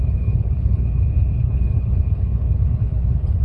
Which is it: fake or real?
fake